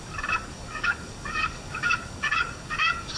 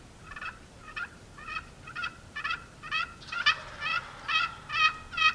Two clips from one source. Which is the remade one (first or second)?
first